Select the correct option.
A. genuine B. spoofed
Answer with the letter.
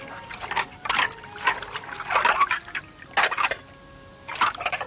A